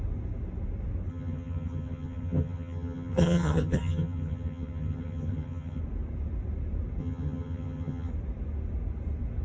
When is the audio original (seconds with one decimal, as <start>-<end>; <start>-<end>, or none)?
0.0-1.1; 5.8-7.0; 8.1-9.4

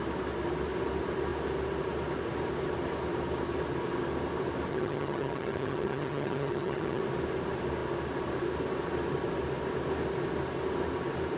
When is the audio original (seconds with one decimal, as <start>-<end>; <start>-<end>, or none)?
0.0-4.7; 7.0-11.4